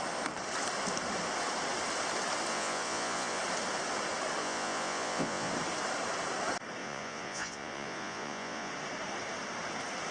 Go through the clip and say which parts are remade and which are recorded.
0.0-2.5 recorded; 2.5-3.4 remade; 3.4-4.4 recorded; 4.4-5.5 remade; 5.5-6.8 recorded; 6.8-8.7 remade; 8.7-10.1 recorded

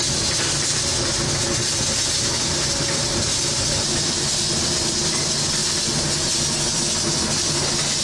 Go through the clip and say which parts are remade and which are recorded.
0.0-8.0 recorded

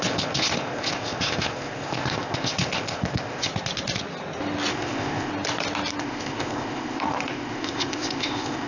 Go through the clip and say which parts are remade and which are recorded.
0.0-3.5 remade; 3.5-4.7 recorded; 4.7-5.3 remade; 5.3-6.0 recorded; 6.0-8.7 remade

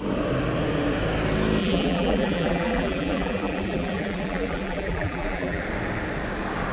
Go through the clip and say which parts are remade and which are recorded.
0.0-1.6 recorded; 1.6-5.6 remade; 5.6-6.7 recorded

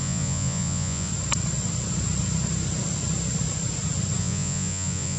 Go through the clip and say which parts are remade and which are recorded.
0.0-1.1 remade; 1.1-4.2 recorded; 4.2-5.2 remade